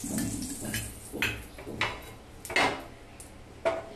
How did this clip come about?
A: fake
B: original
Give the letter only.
B